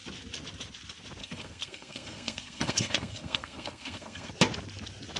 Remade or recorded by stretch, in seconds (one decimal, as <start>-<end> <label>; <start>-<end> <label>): 0.0-1.2 recorded; 1.2-4.3 remade; 4.3-5.2 recorded